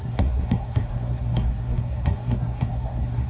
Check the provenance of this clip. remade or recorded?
remade